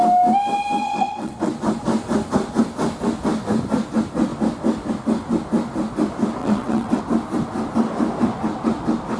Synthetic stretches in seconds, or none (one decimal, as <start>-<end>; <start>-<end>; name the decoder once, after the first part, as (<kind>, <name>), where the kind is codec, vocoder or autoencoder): 0.8-1.5 (vocoder, WaveNeXt); 6.4-7.0